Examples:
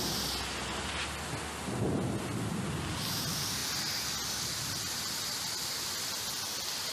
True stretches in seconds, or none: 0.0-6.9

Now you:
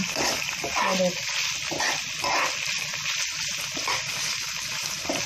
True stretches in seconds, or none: 0.0-5.3

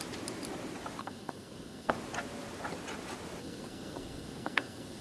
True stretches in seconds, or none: 0.0-1.0; 1.9-3.4

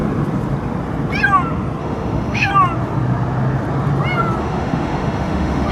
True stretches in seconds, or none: 0.0-1.8; 2.5-4.4